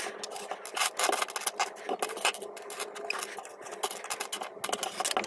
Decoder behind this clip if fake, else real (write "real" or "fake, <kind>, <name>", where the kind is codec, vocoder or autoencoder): real